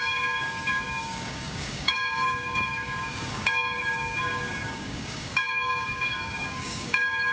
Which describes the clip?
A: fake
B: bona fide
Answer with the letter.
A